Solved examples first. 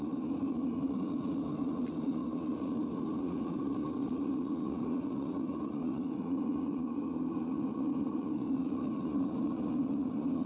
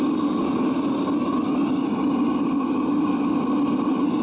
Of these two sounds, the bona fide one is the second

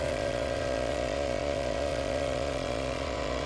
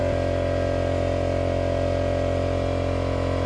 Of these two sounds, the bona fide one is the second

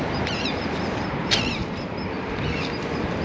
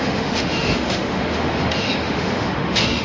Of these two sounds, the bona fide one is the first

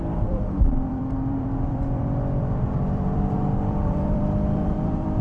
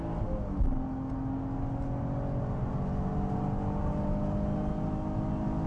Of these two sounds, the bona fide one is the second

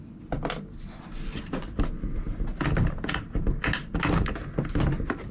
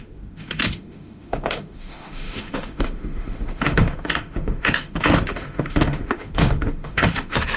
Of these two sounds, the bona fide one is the first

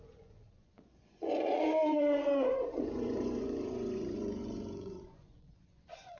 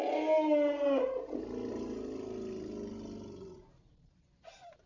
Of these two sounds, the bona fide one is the second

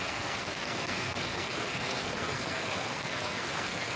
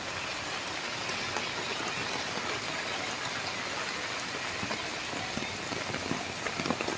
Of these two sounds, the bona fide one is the second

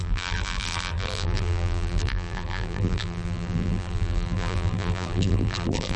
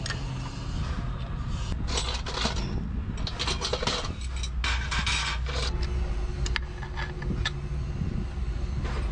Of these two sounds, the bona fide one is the second